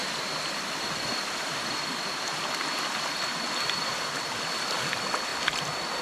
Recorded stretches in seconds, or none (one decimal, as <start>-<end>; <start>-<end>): 0.0-6.0

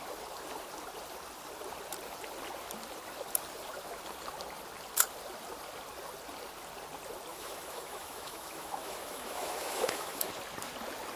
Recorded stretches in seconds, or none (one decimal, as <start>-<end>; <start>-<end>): 0.0-7.3; 10.3-11.2

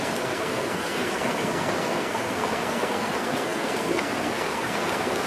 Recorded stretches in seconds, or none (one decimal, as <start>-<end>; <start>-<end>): none

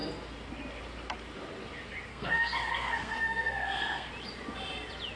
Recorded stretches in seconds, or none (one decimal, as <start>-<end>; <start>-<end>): 0.0-2.1; 4.1-5.2